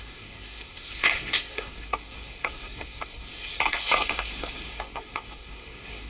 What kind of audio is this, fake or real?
fake